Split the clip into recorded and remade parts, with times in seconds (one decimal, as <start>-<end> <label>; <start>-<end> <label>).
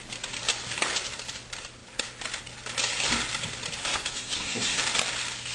0.0-3.8 recorded; 3.8-4.8 remade; 4.8-5.5 recorded